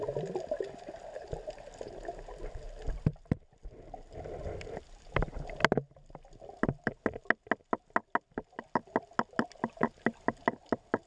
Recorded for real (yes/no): yes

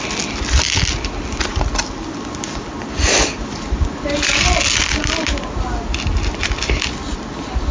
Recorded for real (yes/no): yes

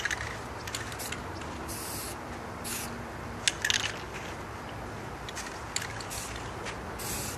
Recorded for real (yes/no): yes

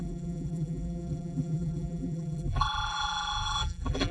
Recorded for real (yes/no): no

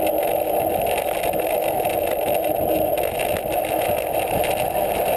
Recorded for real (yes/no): yes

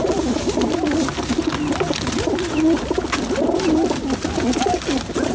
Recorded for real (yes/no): yes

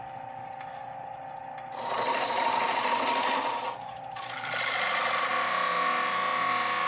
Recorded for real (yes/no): yes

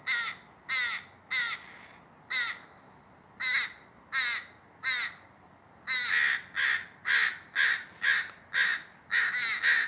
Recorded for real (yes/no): yes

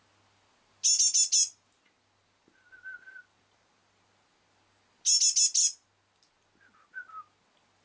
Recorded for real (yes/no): yes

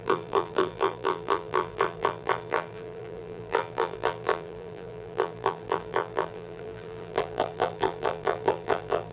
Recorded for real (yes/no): no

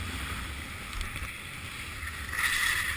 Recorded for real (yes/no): yes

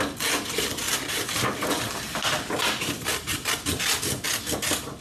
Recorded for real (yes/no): yes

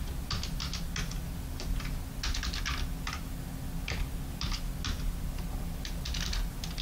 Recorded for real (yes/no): yes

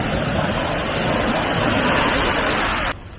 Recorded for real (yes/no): yes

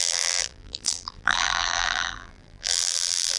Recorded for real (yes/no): no